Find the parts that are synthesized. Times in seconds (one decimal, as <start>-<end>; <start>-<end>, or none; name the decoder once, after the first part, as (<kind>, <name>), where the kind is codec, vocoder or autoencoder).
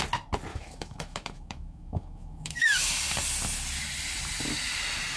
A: 0.5-2.9 (autoencoder, DAC-VAE)